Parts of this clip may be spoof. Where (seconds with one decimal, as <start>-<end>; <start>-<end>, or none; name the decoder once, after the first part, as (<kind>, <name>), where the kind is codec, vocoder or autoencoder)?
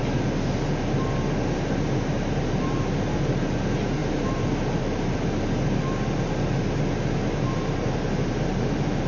none